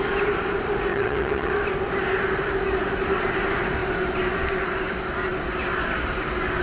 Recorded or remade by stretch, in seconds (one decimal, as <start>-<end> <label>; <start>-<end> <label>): 0.0-0.9 recorded; 0.9-1.5 remade; 1.5-6.6 recorded